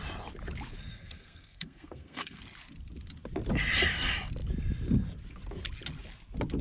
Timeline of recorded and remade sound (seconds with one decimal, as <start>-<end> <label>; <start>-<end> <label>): 0.0-0.9 recorded; 0.9-2.4 remade; 2.4-6.6 recorded